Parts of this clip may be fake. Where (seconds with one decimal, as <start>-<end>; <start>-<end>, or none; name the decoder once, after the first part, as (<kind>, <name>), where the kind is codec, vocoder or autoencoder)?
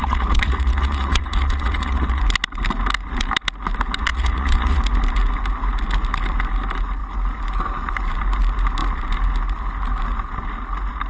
0.0-2.2 (vocoder, Vocos); 4.1-4.8